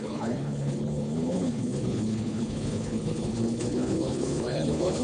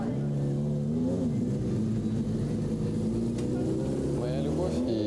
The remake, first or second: first